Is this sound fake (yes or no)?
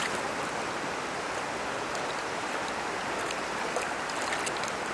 no